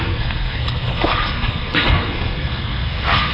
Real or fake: fake